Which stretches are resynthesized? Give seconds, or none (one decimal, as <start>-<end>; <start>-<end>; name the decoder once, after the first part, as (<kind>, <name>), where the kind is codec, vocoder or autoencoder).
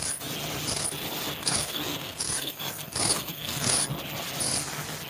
1.4-3.8 (codec, SNAC)